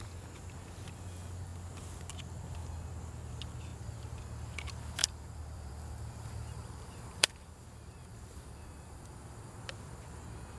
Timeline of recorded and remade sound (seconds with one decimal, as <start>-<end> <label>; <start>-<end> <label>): 0.0-5.0 recorded; 5.0-9.6 remade; 9.6-10.6 recorded